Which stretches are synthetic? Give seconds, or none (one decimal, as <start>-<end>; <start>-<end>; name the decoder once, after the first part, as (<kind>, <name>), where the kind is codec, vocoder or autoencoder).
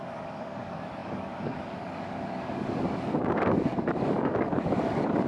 0.0-5.3 (codec, DAC)